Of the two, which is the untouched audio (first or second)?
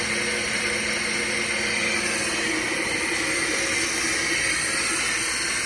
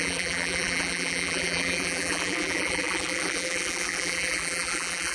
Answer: first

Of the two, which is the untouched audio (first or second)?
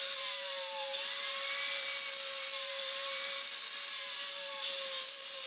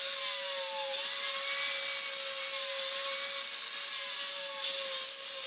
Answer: second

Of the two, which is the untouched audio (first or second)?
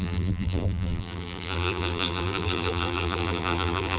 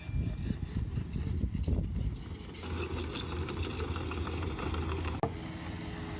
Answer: second